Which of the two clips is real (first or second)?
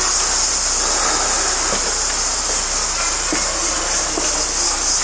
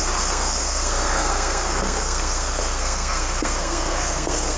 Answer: first